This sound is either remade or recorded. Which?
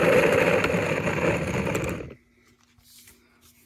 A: recorded